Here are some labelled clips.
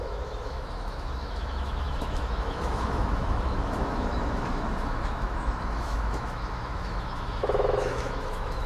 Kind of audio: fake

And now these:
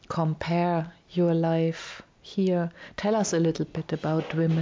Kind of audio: real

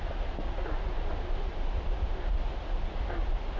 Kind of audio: real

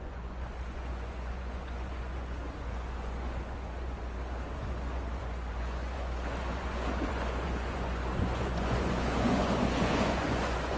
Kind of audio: fake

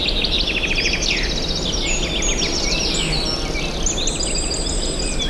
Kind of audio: real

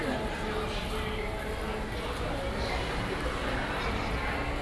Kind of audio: real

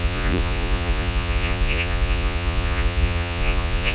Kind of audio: fake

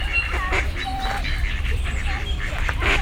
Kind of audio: fake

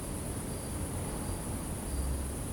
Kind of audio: real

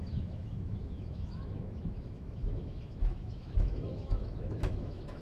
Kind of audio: fake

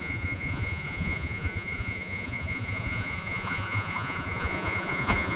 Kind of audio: fake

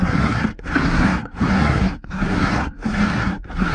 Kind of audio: fake